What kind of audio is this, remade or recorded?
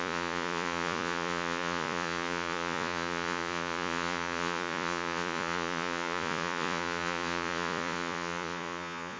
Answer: remade